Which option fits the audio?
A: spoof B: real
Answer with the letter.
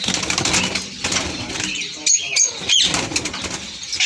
B